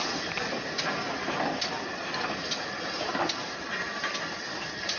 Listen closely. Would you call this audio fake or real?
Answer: real